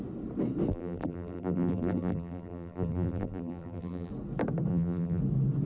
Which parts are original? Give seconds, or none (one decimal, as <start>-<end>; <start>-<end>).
0.0-0.7; 4.1-4.7; 5.2-5.7